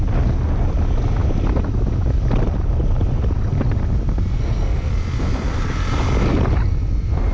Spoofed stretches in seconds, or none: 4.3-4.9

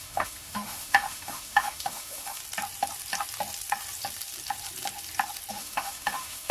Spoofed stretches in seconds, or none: 0.0-2.4; 5.5-6.5

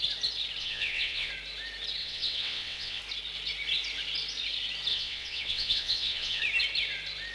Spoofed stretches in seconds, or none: 0.6-1.3; 2.0-3.0; 4.9-6.4

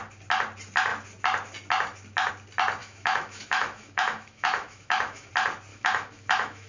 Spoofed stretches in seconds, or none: 2.8-5.3; 5.7-6.7

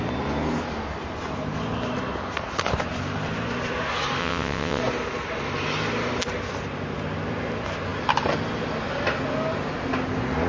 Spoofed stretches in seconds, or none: 4.2-4.8

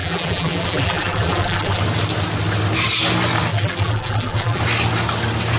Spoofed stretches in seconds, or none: 0.0-1.8; 3.5-4.6